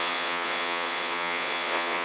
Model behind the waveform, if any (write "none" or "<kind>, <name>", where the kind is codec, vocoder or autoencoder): vocoder, Vocos